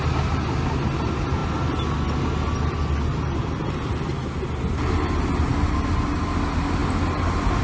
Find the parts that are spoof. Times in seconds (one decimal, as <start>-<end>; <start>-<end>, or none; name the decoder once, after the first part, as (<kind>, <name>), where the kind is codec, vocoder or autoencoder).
none